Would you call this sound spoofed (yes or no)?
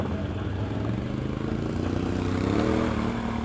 no